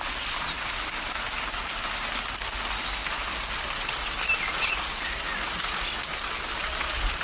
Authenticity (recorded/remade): recorded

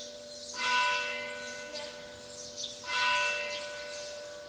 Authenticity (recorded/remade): recorded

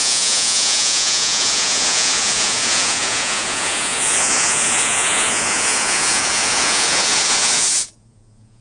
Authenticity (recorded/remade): remade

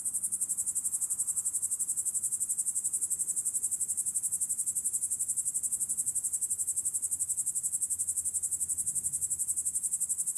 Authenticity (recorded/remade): recorded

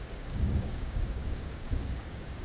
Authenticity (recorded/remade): remade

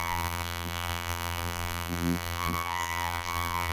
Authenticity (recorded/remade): remade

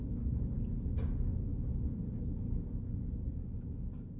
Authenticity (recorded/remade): recorded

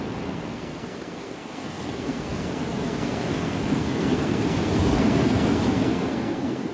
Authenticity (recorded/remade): remade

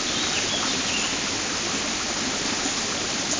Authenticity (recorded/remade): recorded